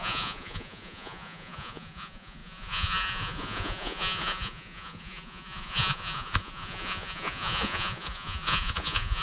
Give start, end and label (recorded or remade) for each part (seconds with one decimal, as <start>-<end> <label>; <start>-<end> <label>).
0.0-9.2 remade